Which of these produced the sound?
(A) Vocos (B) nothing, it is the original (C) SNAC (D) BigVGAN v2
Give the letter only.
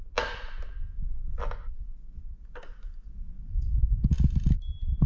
B